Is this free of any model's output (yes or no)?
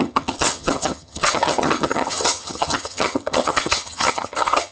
no